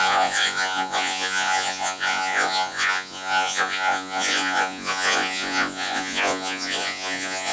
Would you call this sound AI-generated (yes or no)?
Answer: yes